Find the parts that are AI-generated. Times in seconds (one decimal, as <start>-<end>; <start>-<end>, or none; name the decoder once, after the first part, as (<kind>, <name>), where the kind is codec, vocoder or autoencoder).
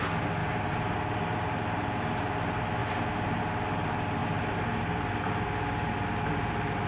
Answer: 0.4-2.4 (vocoder, BigVGAN v2); 2.8-3.4; 4.2-5.9